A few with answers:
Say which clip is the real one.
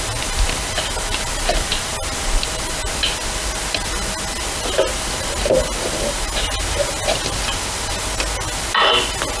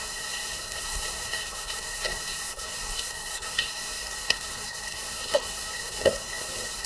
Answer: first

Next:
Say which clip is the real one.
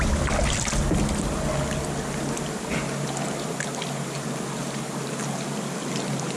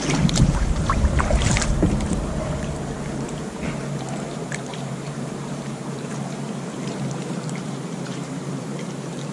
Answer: first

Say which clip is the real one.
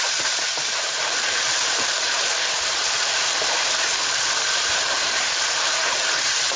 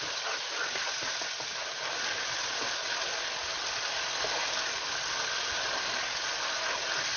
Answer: second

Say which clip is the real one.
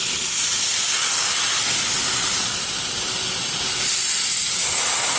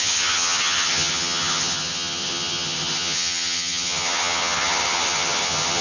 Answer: first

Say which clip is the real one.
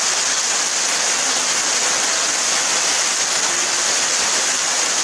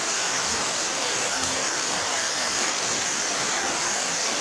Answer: first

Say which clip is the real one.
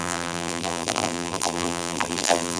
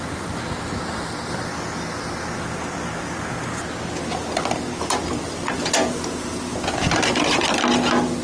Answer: second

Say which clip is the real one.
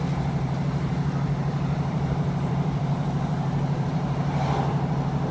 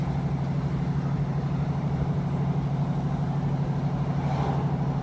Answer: second